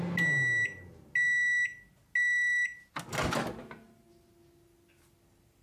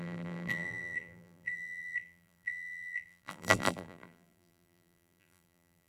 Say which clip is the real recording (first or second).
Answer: first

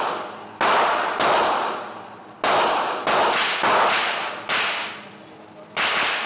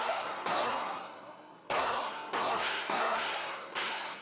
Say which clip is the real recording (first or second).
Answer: first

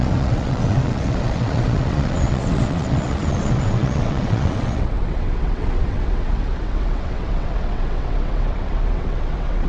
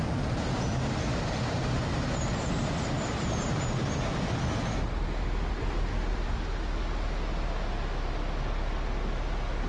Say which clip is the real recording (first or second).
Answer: second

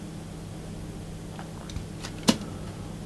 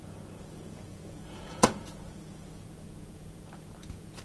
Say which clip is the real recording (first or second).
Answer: first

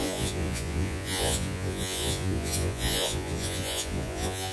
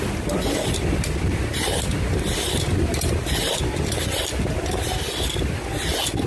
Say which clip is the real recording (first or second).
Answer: second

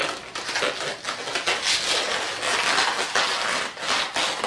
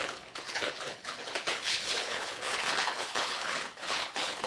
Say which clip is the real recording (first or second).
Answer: first